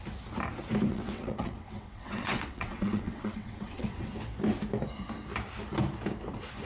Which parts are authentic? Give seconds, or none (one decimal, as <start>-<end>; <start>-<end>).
0.0-0.9; 4.1-6.7